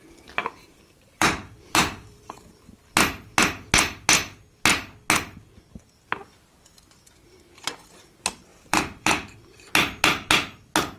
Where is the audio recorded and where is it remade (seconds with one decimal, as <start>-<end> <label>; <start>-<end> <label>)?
0.0-0.6 recorded; 0.6-2.8 remade; 2.8-8.5 recorded; 8.5-9.7 remade; 9.7-11.0 recorded